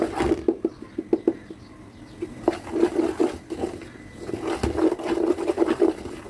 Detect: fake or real real